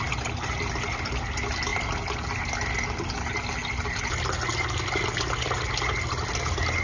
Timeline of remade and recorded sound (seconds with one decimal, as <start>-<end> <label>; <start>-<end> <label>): 0.0-6.8 recorded